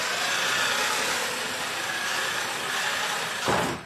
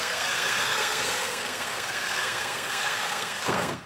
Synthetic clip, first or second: second